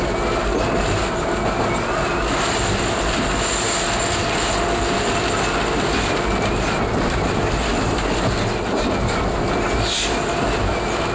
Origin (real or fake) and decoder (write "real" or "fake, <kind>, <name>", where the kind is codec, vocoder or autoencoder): real